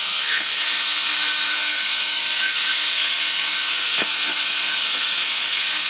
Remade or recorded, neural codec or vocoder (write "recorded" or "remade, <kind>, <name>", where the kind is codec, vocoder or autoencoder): remade, codec, SNAC